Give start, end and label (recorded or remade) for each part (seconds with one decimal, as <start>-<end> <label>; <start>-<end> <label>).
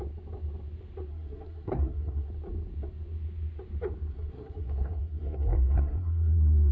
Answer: 0.0-1.1 recorded; 1.1-2.3 remade; 2.3-4.1 recorded; 4.1-6.7 remade